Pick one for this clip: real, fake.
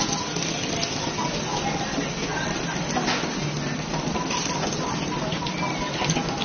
real